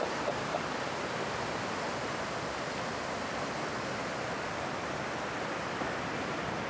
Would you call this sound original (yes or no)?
no